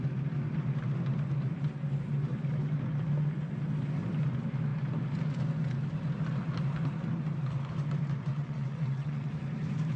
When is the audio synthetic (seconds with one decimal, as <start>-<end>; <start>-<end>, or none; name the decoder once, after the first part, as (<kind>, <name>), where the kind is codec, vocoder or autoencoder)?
8.3-9.3 (vocoder, WaveNeXt)